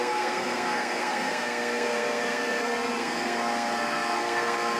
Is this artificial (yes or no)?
yes